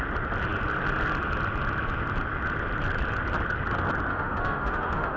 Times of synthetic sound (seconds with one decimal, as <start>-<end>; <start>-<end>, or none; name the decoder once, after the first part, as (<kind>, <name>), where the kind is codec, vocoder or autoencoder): 4.1-5.2 (autoencoder, DAC-VAE)